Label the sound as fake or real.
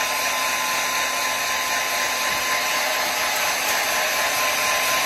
real